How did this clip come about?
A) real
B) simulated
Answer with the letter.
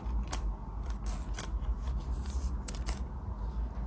A